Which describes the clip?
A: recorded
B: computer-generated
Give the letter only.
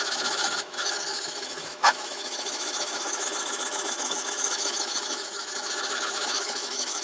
B